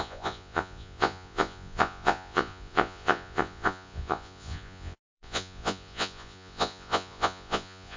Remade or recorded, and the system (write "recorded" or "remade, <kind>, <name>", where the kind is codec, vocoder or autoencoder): remade, vocoder, Vocos